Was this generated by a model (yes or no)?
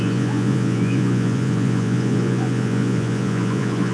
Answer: yes